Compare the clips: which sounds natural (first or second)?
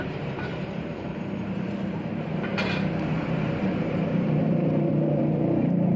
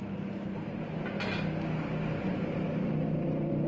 second